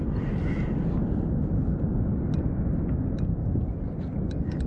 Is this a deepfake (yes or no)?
no